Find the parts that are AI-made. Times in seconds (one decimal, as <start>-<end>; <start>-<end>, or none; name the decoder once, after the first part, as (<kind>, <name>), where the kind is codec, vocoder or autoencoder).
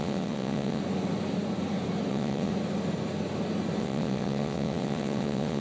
0.0-0.8 (vocoder, WaveNeXt); 2.1-2.5; 3.8-5.6